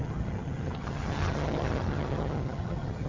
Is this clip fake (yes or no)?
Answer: yes